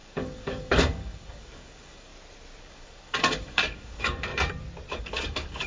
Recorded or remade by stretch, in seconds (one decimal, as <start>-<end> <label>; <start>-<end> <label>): 0.0-2.1 remade; 2.1-2.6 recorded; 2.6-4.3 remade; 4.3-4.9 recorded; 4.9-5.7 remade